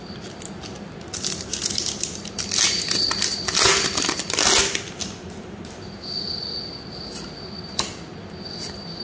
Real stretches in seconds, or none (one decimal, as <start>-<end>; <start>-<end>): 0.0-9.0